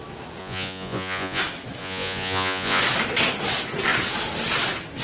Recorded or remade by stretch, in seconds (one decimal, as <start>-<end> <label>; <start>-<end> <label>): 0.0-0.4 recorded; 0.4-1.4 remade; 1.4-1.8 recorded; 1.8-2.8 remade; 2.8-5.0 recorded